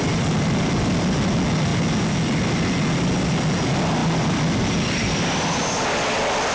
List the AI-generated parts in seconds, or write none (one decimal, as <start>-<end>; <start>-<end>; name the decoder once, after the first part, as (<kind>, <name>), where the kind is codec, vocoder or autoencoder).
none